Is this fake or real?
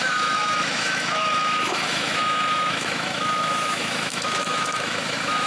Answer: fake